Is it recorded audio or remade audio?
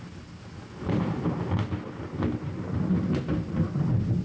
recorded